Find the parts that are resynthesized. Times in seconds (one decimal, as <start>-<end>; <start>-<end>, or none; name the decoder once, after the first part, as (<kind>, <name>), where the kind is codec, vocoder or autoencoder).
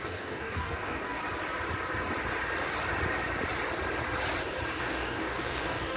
0.0-1.2 (codec, DAC); 4.8-6.0